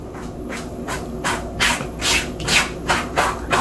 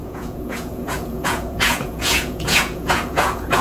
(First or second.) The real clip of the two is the first